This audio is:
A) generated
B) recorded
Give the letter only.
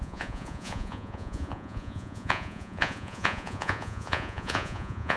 A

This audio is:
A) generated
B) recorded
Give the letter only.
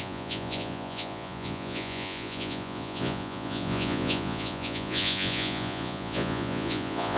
A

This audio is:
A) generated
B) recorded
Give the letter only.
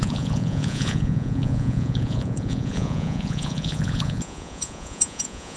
A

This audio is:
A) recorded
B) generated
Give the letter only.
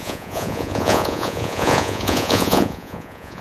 B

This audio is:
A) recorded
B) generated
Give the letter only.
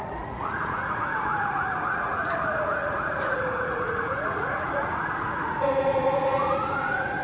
B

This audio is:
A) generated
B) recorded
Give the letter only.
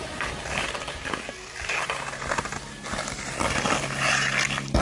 B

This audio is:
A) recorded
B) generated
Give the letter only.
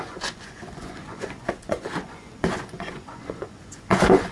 B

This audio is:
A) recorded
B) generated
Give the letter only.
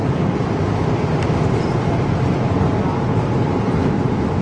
A